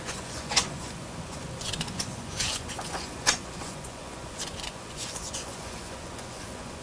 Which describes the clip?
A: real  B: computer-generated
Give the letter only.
B